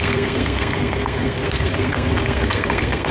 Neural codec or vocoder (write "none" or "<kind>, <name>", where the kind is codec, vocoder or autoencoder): codec, SNAC